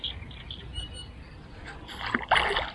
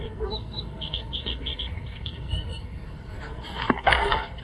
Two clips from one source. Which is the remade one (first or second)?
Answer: second